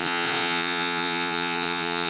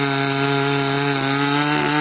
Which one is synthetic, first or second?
first